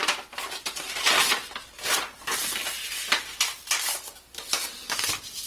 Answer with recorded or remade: remade